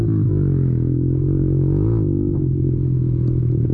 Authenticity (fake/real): fake